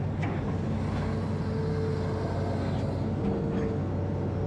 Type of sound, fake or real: real